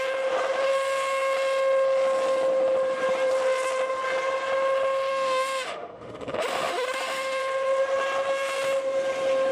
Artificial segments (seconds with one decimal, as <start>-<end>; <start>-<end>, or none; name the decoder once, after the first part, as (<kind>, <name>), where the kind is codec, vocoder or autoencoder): 5.1-7.4 (autoencoder, DAC-VAE)